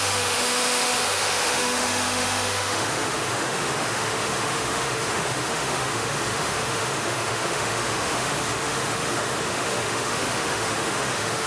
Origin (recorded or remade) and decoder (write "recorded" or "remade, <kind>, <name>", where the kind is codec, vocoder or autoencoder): remade, autoencoder, DAC-VAE